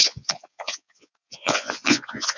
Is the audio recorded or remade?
remade